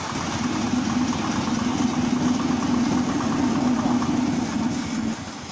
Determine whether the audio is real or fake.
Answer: real